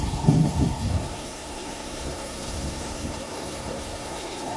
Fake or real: fake